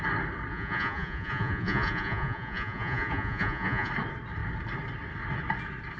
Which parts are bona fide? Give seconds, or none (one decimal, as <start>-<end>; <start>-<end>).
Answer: 0.0-0.5; 3.9-6.0